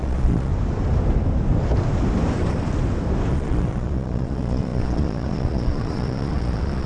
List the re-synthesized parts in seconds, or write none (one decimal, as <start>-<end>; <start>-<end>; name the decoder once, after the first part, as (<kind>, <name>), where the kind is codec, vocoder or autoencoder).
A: 0.0-0.5 (vocoder, Vocos); 3.3-6.9